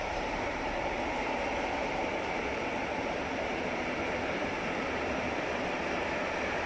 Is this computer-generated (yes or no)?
yes